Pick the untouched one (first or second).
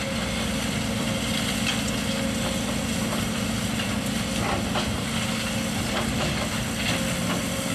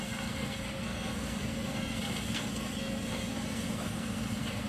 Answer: first